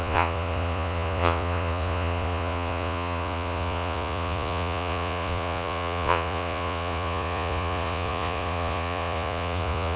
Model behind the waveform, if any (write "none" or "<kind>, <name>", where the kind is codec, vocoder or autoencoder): vocoder, Vocos